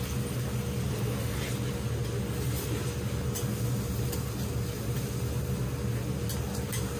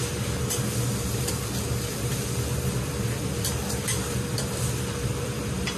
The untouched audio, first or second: first